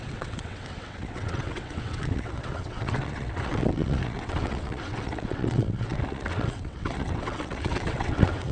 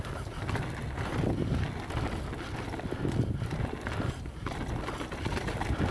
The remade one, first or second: first